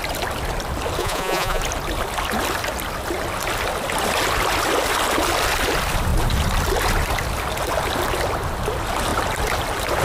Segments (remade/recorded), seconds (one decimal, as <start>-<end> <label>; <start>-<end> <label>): 0.0-1.0 recorded; 1.0-1.6 remade; 1.6-10.0 recorded